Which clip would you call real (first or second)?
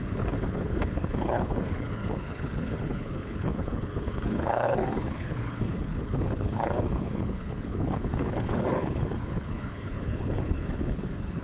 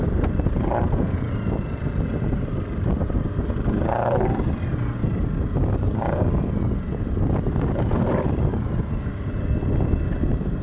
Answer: second